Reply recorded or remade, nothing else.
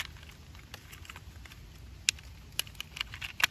recorded